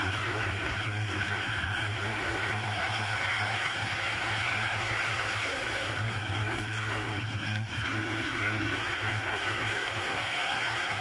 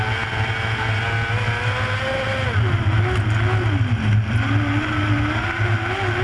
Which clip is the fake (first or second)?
first